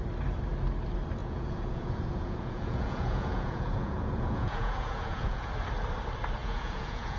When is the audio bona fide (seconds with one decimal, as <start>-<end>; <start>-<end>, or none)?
0.0-1.2; 5.5-6.4

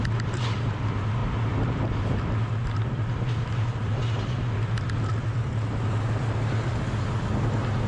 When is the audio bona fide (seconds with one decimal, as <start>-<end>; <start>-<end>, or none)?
0.0-7.9